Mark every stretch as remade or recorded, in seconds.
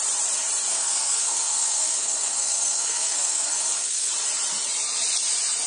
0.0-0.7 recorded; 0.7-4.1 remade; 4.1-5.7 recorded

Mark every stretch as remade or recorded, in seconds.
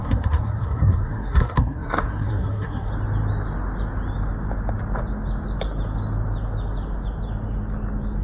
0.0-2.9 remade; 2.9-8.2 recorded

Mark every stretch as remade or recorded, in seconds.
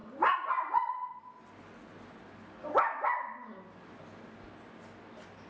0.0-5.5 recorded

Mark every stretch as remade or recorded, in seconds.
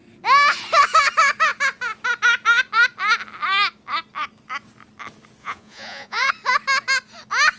0.0-5.4 recorded; 5.4-6.3 remade; 6.3-7.6 recorded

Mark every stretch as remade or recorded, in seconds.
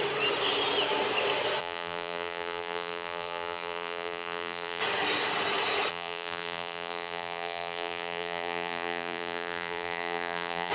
0.0-1.6 recorded; 1.6-4.8 remade; 4.8-5.9 recorded; 5.9-10.7 remade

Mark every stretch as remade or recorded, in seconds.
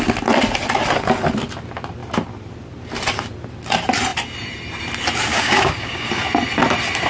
0.0-5.3 recorded; 5.3-6.1 remade; 6.1-7.1 recorded